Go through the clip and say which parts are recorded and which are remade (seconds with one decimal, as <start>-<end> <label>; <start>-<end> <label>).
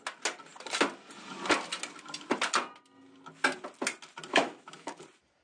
0.0-4.3 recorded; 4.3-5.0 remade; 5.0-5.4 recorded